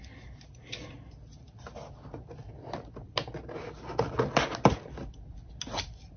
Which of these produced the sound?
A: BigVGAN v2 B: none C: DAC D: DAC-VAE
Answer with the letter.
B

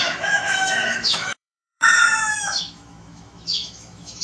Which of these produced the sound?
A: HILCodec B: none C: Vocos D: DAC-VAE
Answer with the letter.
D